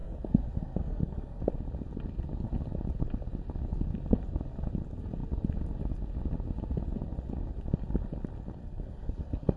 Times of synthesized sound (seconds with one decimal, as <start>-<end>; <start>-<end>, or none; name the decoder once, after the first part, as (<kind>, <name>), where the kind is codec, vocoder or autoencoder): 0.0-1.4 (codec, SNAC); 8.6-9.6